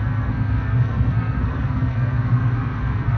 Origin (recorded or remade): remade